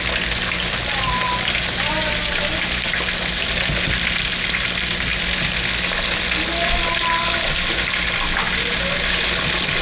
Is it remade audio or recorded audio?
recorded